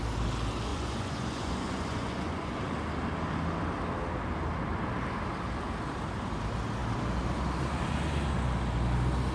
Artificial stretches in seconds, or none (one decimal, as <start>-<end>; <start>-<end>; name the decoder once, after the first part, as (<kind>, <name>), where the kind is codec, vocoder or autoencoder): 0.7-2.6 (vocoder, Vocos)